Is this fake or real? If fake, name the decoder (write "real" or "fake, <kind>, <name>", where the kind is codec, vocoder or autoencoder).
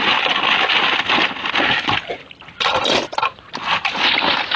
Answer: real